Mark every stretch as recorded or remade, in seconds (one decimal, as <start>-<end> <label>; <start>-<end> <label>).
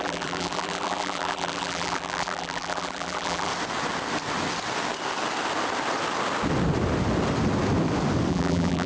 0.0-3.5 remade; 3.5-8.3 recorded; 8.3-8.9 remade